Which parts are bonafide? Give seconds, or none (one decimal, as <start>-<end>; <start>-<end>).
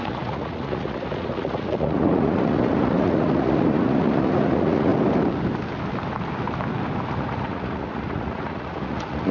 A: 4.9-7.1